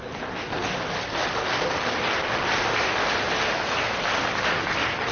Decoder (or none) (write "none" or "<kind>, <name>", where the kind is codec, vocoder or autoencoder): none